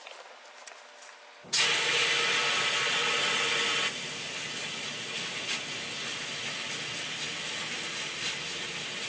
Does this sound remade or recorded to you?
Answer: recorded